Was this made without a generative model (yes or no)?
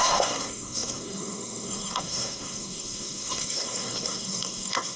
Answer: no